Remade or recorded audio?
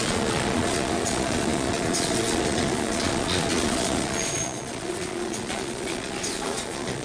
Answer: remade